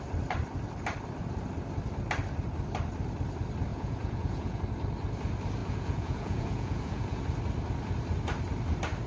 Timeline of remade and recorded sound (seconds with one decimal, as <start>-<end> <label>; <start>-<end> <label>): 0.0-3.7 recorded; 3.7-4.6 remade; 4.6-5.6 recorded; 5.6-7.2 remade; 7.2-9.1 recorded